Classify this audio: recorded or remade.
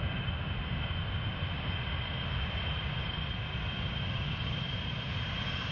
recorded